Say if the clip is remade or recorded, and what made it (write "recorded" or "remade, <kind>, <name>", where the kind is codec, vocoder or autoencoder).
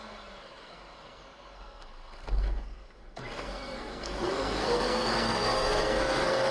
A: remade, codec, SNAC